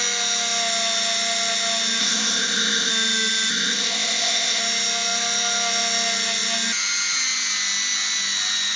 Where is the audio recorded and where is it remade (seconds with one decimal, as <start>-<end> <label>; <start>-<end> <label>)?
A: 0.0-2.0 recorded; 2.0-2.9 remade; 2.9-3.5 recorded; 3.5-4.6 remade; 4.6-8.8 recorded